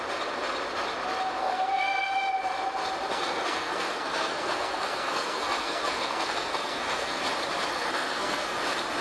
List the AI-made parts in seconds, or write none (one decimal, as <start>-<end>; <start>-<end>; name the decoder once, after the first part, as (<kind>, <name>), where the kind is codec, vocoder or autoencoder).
1.4-2.1 (codec, SNAC); 3.1-7.2; 7.7-8.6